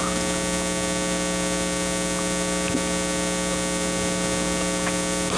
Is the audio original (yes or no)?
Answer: yes